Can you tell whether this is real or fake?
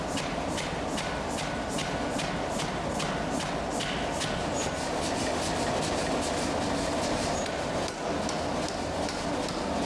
real